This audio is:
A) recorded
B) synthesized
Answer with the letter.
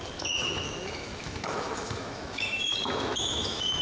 B